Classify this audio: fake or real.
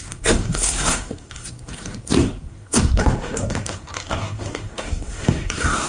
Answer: fake